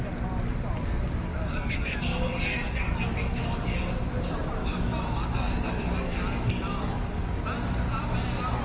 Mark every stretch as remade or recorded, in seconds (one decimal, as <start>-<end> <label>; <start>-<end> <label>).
0.0-1.3 recorded; 1.3-3.9 remade; 3.9-4.6 recorded; 4.6-7.4 remade; 7.4-8.6 recorded